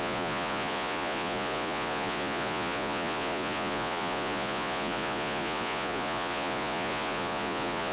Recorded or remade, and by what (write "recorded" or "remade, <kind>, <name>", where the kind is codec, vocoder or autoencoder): remade, vocoder, Vocos